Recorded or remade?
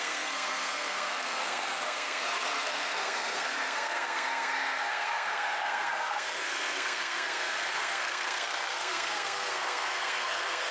remade